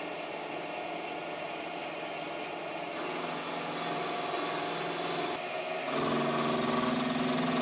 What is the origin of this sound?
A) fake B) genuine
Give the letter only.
B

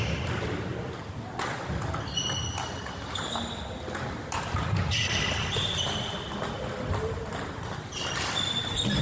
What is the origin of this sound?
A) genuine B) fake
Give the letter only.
A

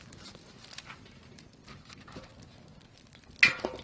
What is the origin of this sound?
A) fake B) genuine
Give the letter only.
B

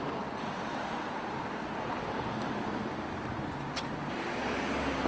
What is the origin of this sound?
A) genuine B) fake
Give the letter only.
A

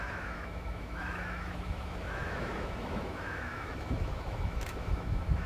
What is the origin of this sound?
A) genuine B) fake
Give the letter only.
B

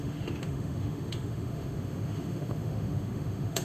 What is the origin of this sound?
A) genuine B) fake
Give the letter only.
B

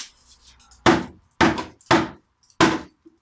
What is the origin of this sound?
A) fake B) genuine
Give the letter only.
B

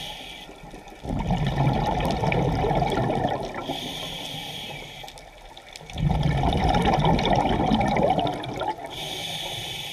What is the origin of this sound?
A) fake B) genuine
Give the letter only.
B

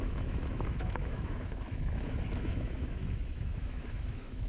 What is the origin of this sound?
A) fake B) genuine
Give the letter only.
A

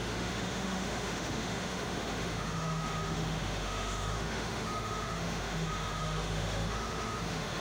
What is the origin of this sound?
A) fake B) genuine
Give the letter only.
A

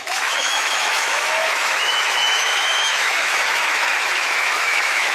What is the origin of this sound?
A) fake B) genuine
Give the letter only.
A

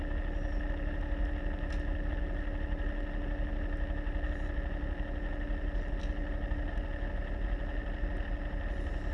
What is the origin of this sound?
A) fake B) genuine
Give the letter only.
B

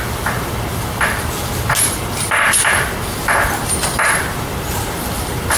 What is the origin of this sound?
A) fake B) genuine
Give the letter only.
B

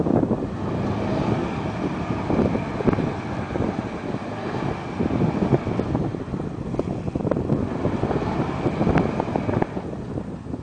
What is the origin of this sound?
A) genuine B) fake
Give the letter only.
A